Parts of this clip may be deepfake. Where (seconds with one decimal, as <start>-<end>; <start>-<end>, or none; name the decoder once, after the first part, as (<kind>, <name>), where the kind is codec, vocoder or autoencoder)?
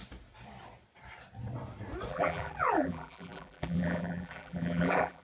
2.1-5.2 (vocoder, BigVGAN v2)